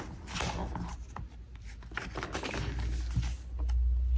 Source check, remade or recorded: recorded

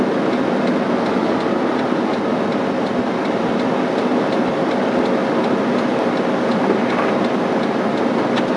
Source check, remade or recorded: recorded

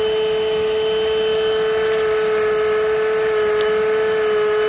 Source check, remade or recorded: recorded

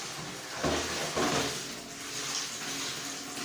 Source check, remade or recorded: recorded